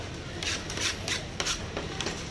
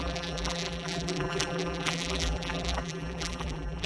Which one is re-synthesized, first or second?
second